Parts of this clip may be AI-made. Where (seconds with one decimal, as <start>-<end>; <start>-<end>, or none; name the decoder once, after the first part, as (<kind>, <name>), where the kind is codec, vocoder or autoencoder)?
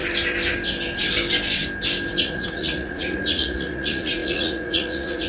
2.2-5.3 (vocoder, Vocos)